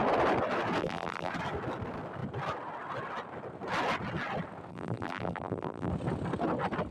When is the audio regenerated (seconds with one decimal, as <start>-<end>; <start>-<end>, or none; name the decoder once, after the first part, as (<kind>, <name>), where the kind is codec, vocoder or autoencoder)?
0.8-1.3 (vocoder, BigVGAN v2); 4.7-5.9